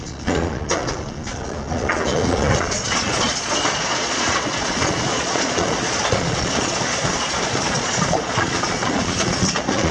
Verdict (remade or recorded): remade